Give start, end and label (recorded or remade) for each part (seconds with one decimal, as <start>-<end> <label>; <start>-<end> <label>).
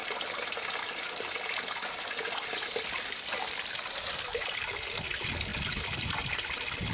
0.0-6.9 recorded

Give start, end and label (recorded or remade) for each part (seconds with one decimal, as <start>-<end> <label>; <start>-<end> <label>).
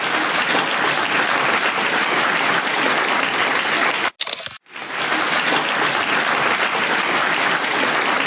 0.0-8.3 recorded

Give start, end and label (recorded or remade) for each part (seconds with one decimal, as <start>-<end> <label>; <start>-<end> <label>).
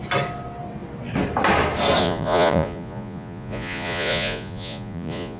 0.0-2.0 recorded; 2.0-5.4 remade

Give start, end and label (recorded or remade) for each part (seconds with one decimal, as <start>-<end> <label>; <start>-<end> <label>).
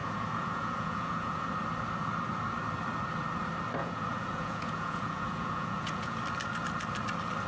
0.0-1.5 remade; 1.5-3.8 recorded; 3.8-6.2 remade; 6.2-7.5 recorded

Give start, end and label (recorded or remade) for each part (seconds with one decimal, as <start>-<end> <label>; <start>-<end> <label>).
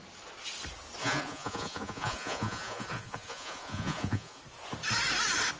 0.0-1.0 recorded; 1.0-4.4 remade; 4.4-5.6 recorded